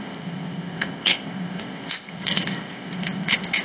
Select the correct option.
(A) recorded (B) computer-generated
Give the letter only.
B